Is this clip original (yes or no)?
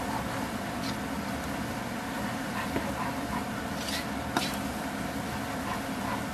yes